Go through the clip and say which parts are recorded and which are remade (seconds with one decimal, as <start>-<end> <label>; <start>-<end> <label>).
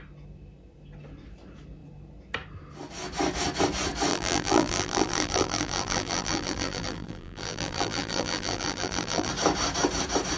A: 0.0-4.1 recorded; 4.1-9.3 remade; 9.3-10.4 recorded